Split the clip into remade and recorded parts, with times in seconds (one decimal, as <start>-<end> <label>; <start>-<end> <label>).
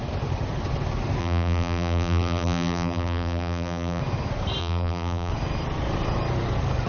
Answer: 0.0-1.2 recorded; 1.2-4.0 remade; 4.0-4.6 recorded; 4.6-5.3 remade; 5.3-6.9 recorded